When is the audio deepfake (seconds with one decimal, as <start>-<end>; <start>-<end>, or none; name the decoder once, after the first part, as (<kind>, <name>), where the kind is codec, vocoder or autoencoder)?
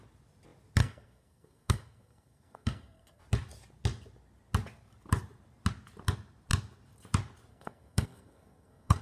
0.8-3.2 (codec, SNAC); 7.5-9.0